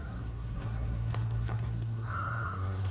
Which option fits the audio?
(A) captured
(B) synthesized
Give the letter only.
B